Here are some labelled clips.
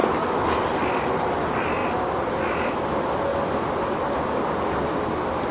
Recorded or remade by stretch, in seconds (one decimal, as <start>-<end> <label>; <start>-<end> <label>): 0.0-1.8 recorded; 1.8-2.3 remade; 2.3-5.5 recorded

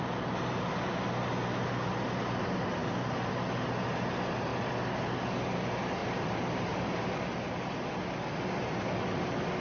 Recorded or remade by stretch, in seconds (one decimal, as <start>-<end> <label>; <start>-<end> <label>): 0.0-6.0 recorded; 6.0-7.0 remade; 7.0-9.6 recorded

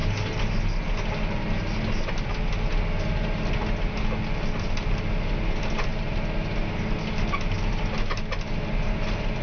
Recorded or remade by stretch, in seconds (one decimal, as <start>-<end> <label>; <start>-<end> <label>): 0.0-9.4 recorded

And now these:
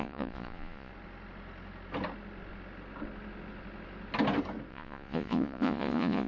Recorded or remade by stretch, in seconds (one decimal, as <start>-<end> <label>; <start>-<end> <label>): 0.0-0.9 remade; 0.9-4.7 recorded; 4.7-6.3 remade

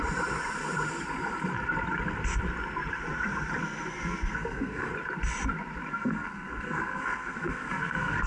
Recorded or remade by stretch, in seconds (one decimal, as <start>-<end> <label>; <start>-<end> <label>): 0.0-3.6 recorded; 3.6-4.9 remade; 4.9-5.9 recorded; 5.9-8.3 remade